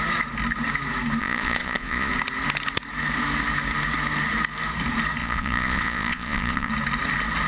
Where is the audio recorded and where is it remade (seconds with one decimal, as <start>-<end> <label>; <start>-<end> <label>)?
0.0-1.2 recorded; 1.2-2.1 remade; 2.1-5.2 recorded; 5.2-6.7 remade; 6.7-7.5 recorded